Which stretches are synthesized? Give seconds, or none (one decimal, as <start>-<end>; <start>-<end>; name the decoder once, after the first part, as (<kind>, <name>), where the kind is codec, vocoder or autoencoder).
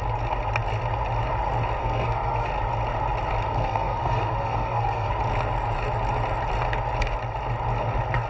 1.8-2.5 (codec, SNAC); 3.5-5.1